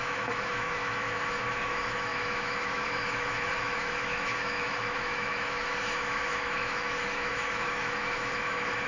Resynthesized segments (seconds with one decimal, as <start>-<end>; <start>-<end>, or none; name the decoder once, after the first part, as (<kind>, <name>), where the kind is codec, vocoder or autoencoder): 0.0-8.9 (autoencoder, DAC-VAE)